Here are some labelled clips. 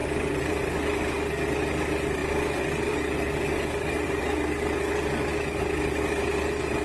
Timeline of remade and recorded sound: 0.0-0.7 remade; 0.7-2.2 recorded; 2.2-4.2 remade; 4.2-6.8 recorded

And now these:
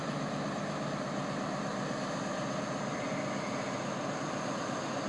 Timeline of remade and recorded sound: 0.0-5.1 recorded

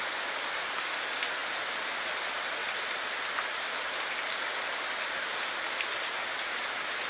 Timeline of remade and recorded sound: 0.0-7.1 recorded

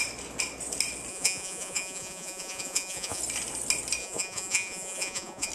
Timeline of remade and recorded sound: 0.0-1.1 recorded; 1.1-3.2 remade; 3.2-4.0 recorded; 4.0-5.5 remade

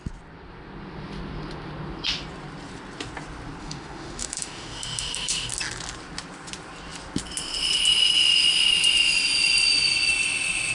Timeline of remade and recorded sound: 0.0-3.6 recorded; 3.6-5.5 remade; 5.5-10.7 recorded

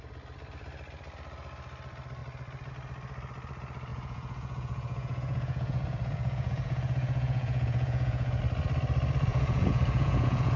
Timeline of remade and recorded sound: 0.0-3.9 recorded; 3.9-8.4 remade; 8.4-9.3 recorded; 9.3-10.6 remade